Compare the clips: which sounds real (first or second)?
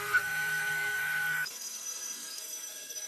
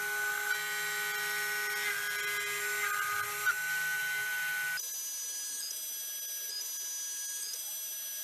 second